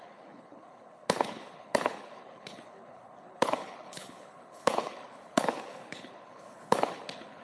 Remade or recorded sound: remade